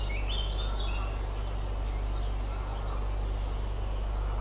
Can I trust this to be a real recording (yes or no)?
yes